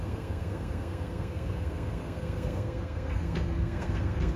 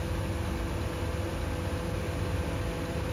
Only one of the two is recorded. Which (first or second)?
second